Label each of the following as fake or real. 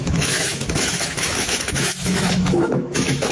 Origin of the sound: fake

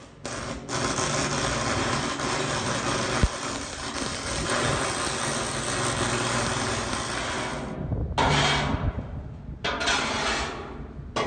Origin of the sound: real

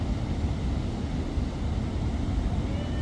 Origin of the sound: real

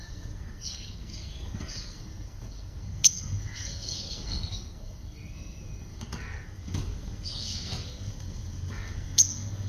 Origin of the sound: fake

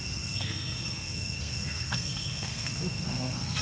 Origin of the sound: fake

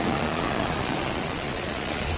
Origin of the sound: fake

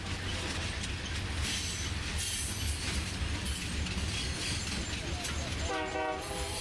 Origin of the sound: real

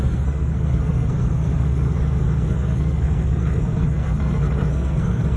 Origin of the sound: fake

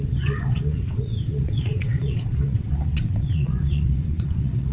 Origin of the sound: fake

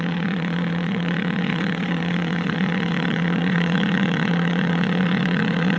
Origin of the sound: fake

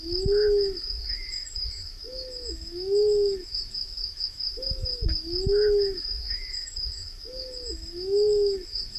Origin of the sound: fake